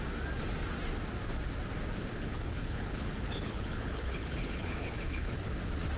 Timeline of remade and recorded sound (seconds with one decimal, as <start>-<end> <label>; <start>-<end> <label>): 0.0-2.0 recorded; 2.0-5.6 remade; 5.6-6.0 recorded